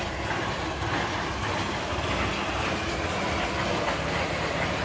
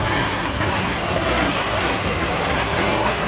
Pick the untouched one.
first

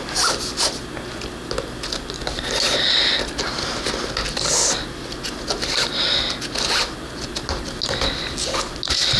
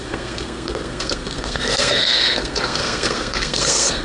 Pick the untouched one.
first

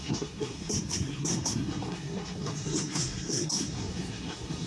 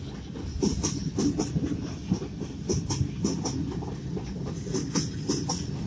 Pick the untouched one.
second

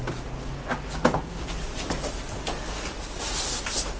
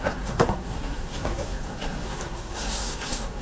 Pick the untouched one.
first